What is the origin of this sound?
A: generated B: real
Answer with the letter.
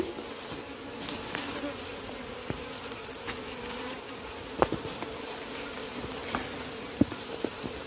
B